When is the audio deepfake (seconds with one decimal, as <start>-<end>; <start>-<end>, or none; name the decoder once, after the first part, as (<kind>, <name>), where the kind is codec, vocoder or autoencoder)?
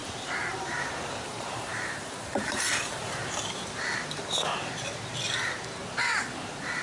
0.0-3.2 (vocoder, BigVGAN v2); 5.9-6.8